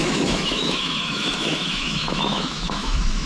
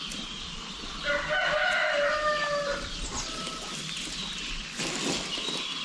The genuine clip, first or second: second